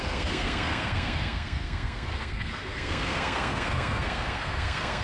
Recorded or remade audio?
remade